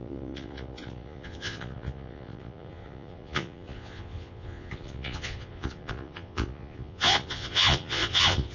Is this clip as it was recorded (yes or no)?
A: no